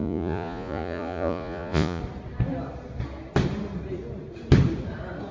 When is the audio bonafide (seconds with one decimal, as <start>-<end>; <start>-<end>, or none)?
2.0-5.3

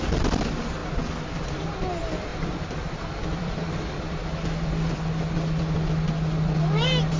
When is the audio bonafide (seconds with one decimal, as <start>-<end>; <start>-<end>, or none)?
0.0-2.3; 5.1-7.2